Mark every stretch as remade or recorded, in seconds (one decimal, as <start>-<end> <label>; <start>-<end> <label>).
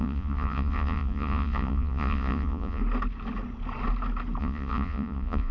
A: 0.0-2.8 remade; 2.8-4.4 recorded; 4.4-5.5 remade